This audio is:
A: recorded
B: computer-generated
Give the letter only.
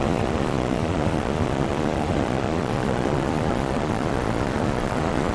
B